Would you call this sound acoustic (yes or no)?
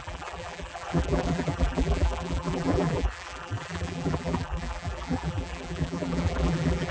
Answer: no